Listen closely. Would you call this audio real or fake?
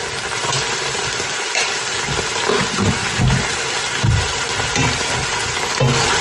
real